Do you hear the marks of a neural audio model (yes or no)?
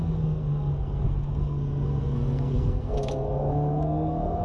yes